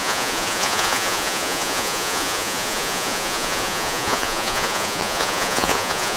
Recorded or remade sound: remade